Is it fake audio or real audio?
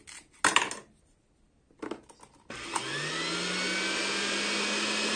real